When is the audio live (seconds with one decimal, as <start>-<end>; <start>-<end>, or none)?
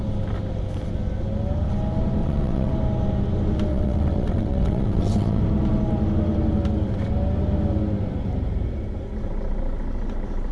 0.0-2.2; 2.7-3.7; 5.4-10.5